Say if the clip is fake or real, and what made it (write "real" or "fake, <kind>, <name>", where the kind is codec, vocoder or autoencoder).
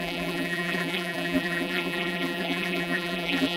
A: fake, vocoder, BigVGAN v2